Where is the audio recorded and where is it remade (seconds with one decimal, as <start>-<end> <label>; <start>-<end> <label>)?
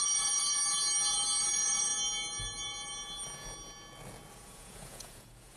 0.0-0.6 remade; 0.6-1.4 recorded; 1.4-1.9 remade; 1.9-4.3 recorded; 4.3-5.6 remade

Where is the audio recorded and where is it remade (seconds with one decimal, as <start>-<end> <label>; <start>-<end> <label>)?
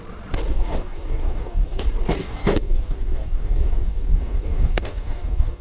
0.0-0.5 recorded; 0.5-1.8 remade; 1.8-2.2 recorded; 2.2-5.6 remade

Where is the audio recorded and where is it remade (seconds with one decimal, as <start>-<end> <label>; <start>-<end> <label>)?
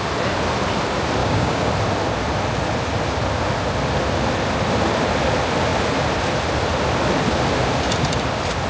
0.0-1.2 recorded; 1.2-1.7 remade; 1.7-8.7 recorded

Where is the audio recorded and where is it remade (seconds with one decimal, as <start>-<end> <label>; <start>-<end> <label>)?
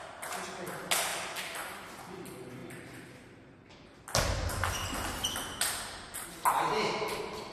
0.0-7.5 recorded